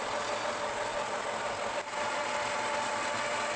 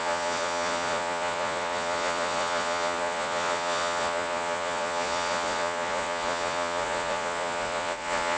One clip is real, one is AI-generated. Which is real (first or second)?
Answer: first